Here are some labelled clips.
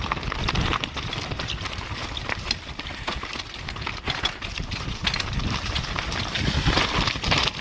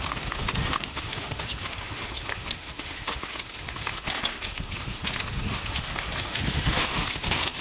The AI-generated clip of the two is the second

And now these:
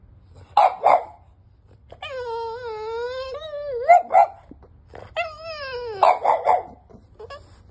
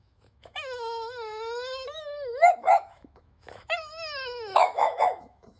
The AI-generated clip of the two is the second